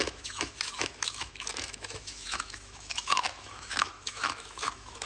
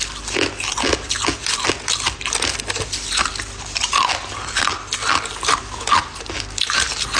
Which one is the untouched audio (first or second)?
second